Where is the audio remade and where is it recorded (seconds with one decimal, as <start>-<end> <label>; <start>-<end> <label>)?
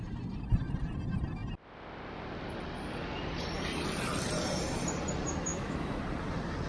0.0-5.5 recorded; 5.5-6.0 remade; 6.0-6.7 recorded